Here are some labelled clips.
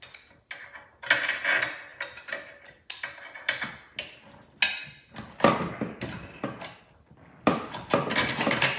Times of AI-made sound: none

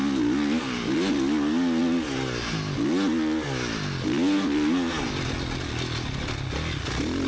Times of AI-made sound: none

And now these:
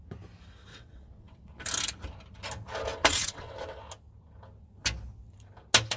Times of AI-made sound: 0.7-1.6 (vocoder, WaveNeXt); 2.9-3.8

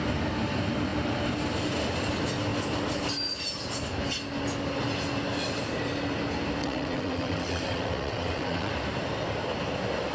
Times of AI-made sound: 6.6-8.7 (vocoder, WaveNeXt)